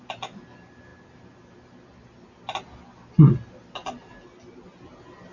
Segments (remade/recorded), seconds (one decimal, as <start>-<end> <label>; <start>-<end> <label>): 0.0-5.3 recorded